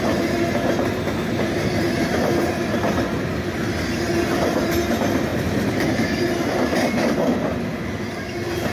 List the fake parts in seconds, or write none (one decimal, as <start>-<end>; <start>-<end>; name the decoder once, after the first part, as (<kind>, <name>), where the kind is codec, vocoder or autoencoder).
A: 5.3-6.3 (vocoder, BigVGAN v2)